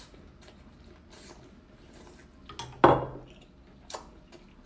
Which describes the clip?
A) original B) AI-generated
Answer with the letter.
A